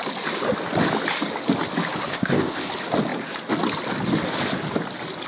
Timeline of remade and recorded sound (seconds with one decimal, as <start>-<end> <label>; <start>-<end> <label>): 0.0-2.1 recorded; 2.1-2.7 remade; 2.7-5.3 recorded